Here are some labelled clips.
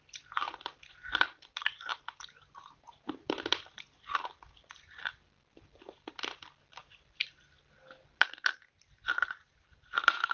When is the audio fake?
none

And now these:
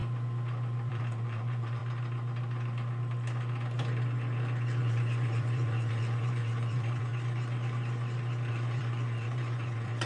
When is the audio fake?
0.9-1.8 (vocoder, Vocos); 4.8-7.1; 8.5-10.1

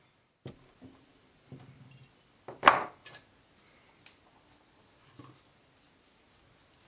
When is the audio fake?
none

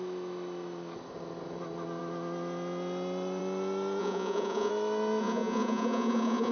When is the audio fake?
4.0-4.7 (vocoder, Vocos); 5.2-6.5

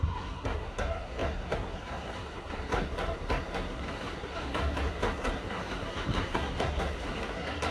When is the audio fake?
0.0-7.7 (codec, SNAC)

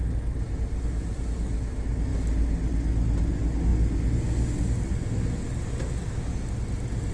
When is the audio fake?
none